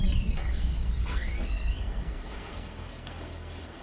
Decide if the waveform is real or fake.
fake